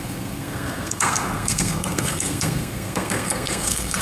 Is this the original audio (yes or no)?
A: no